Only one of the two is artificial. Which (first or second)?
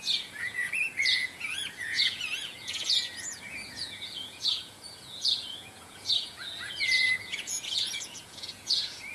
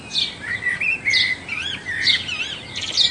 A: first